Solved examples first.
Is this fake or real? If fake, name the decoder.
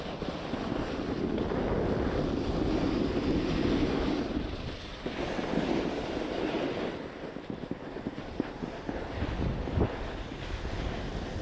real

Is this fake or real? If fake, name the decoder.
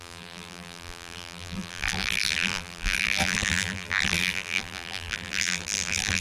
fake, vocoder, BigVGAN v2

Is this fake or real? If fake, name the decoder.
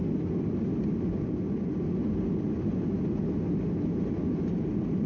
fake, vocoder, BigVGAN v2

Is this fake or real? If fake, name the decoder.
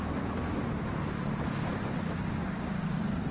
real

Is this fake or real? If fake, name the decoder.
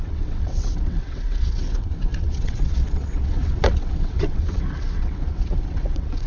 fake, vocoder, WaveNeXt